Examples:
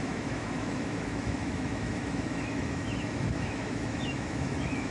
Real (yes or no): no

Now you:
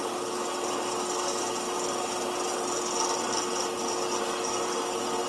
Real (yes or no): yes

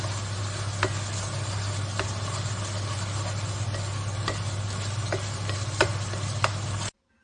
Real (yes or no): yes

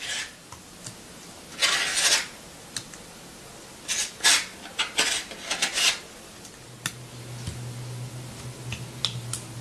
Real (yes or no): yes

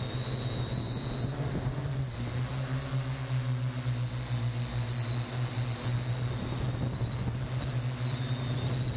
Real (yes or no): yes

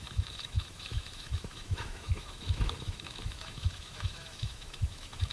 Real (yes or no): no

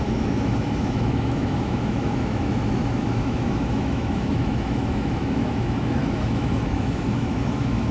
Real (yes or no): no